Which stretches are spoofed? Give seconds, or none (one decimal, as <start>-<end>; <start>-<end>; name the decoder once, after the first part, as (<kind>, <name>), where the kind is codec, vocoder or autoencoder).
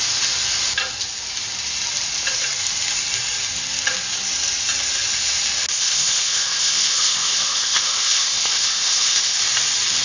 5.7-9.4 (codec, ZipCodec)